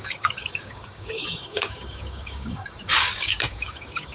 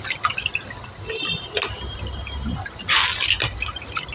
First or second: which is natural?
second